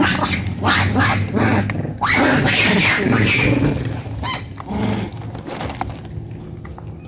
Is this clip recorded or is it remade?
recorded